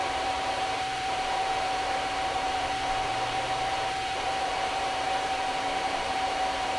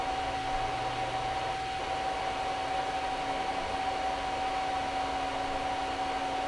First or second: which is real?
second